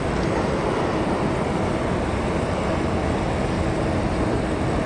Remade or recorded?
recorded